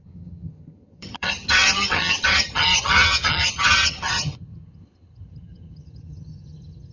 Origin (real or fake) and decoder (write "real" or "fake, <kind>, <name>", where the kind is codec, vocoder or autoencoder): fake, vocoder, HiFi-GAN